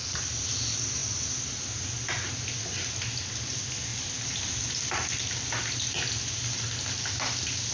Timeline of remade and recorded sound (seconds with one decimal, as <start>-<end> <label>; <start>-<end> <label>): 0.0-7.7 recorded